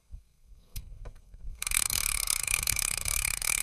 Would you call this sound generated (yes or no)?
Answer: yes